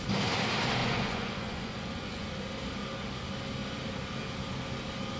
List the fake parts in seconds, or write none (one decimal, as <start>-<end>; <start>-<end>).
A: 0.8-2.3

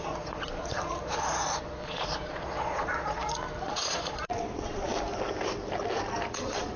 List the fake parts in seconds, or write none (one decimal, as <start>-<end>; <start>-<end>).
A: 0.0-3.2; 3.7-4.9; 6.3-6.8

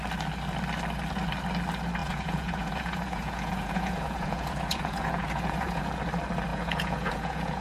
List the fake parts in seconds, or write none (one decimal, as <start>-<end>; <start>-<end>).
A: 2.0-5.8; 6.5-7.6